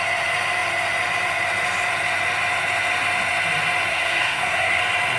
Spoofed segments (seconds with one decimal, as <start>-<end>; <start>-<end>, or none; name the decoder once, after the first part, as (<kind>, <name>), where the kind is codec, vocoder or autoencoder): 3.9-4.8 (codec, SNAC)